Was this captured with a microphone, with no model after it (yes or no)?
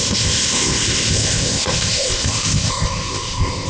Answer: no